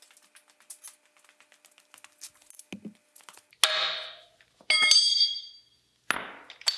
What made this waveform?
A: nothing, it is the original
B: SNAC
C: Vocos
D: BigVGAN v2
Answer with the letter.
A